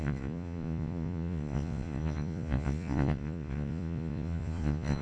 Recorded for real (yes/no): no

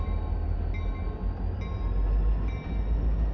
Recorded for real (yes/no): yes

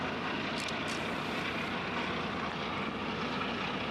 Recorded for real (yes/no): yes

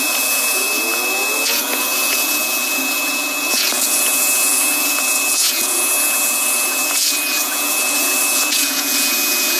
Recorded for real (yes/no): no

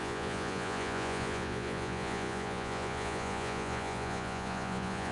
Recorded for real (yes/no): no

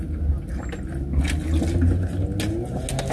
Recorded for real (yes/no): yes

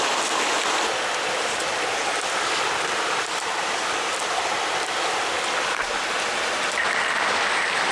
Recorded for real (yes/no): yes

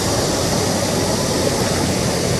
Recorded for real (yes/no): yes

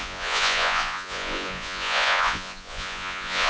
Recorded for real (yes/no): no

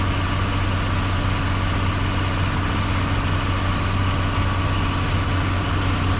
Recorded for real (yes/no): yes